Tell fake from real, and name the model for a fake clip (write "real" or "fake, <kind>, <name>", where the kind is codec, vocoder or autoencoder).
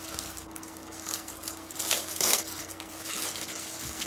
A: fake, codec, SNAC